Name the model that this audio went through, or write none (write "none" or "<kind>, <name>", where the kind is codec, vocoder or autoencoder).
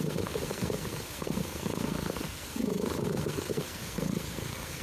codec, SNAC